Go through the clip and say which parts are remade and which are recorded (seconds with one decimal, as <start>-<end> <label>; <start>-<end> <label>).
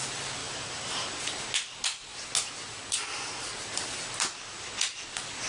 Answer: 0.0-0.4 recorded; 0.4-1.1 remade; 1.1-5.5 recorded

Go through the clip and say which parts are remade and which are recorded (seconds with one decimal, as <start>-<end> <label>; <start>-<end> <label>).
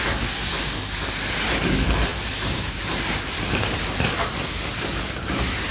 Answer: 0.0-2.1 recorded; 2.1-4.1 remade; 4.1-5.7 recorded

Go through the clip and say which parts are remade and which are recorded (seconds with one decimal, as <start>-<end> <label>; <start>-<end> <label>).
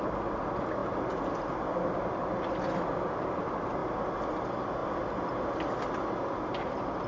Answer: 0.0-7.1 recorded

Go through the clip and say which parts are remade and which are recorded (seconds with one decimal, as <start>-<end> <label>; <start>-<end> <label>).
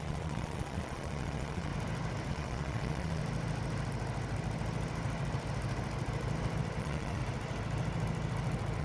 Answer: 0.0-1.7 remade; 1.7-2.3 recorded; 2.3-3.2 remade; 3.2-6.8 recorded; 6.8-7.2 remade; 7.2-8.8 recorded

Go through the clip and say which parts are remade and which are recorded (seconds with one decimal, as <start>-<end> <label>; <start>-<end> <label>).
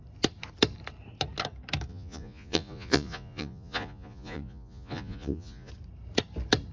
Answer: 0.0-1.9 recorded; 1.9-5.7 remade; 5.7-6.7 recorded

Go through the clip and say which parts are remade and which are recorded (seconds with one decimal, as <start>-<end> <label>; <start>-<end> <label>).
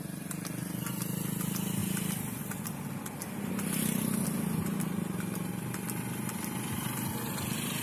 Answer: 0.0-7.8 recorded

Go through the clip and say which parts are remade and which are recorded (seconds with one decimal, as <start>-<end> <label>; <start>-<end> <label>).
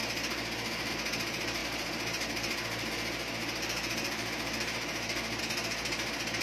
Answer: 0.0-0.9 remade; 0.9-1.6 recorded; 1.6-5.4 remade; 5.4-6.4 recorded